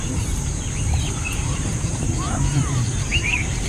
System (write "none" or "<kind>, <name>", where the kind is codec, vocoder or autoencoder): vocoder, BigVGAN v2